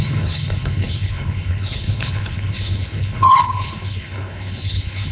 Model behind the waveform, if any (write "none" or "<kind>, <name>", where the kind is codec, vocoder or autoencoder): codec, HILCodec